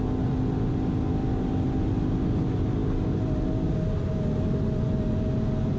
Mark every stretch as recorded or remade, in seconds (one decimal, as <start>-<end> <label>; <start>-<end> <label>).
0.0-1.2 recorded; 1.2-2.1 remade; 2.1-5.8 recorded